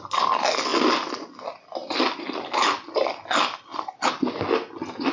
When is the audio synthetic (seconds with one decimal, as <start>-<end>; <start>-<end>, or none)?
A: none